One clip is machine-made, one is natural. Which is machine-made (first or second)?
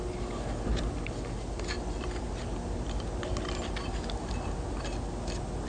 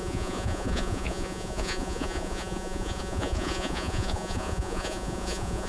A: second